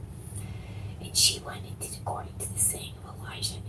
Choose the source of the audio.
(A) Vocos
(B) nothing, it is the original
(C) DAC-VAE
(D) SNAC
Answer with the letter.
B